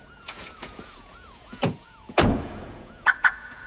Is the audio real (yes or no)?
no